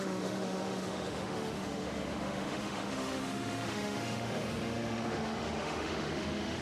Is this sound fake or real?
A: fake